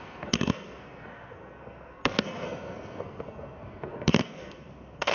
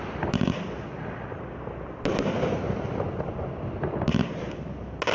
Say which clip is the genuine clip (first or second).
second